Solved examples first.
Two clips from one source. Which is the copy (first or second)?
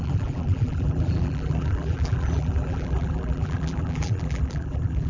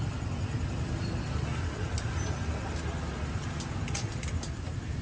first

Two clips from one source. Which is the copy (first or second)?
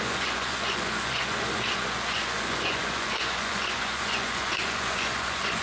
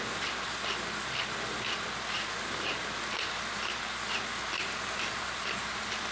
first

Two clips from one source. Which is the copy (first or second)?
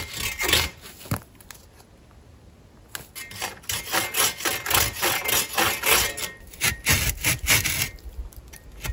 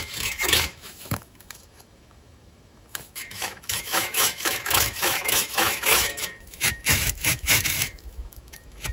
second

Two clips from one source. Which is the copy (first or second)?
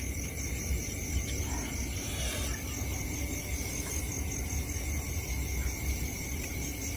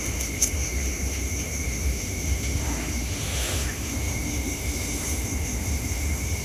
second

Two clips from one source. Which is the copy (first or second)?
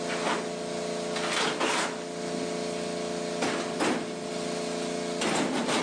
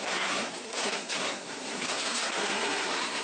second